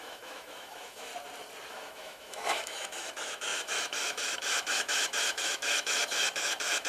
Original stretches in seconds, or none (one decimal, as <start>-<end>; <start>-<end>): 1.1-1.7